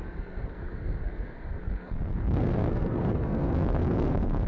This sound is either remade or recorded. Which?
remade